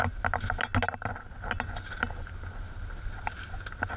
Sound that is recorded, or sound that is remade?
recorded